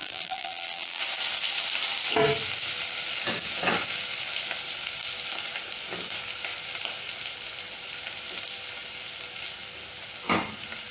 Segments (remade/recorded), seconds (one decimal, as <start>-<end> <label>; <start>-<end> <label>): 0.0-1.0 remade; 1.0-10.9 recorded